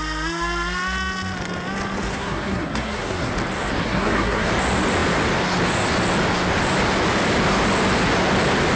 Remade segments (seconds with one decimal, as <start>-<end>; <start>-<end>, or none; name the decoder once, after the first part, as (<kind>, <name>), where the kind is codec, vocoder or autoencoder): 2.1-3.3 (codec, SNAC); 3.8-4.5